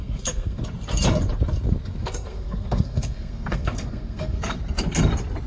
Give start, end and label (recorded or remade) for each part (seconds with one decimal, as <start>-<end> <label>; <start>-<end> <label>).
0.0-0.6 remade; 0.6-2.0 recorded; 2.0-4.6 remade; 4.6-5.5 recorded